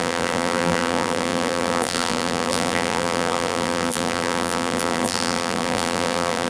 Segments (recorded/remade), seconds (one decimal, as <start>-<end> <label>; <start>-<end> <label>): 0.0-6.5 remade